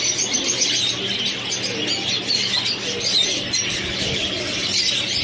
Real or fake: real